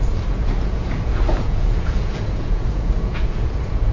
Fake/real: fake